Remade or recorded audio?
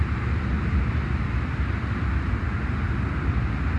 recorded